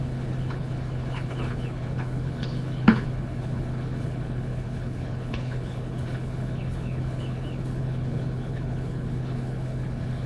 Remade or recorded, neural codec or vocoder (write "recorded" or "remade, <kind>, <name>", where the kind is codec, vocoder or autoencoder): remade, codec, HILCodec